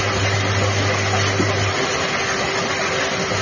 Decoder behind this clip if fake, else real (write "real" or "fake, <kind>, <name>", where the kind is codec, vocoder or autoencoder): real